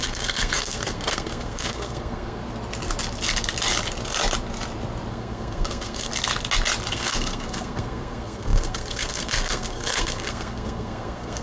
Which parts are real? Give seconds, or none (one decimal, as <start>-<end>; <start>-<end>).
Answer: 2.4-5.1; 6.1-6.9